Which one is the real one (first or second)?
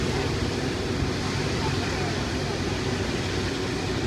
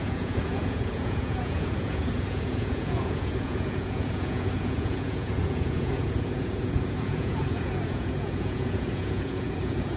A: first